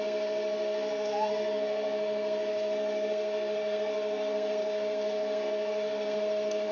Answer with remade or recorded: remade